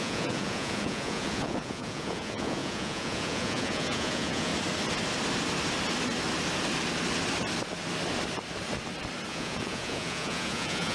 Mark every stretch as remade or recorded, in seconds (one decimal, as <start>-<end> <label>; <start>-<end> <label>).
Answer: 0.0-4.5 remade; 4.5-9.3 recorded; 9.3-10.9 remade